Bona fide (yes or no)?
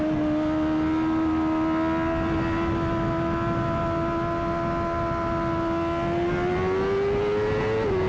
yes